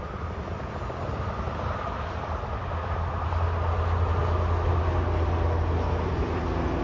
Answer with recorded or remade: recorded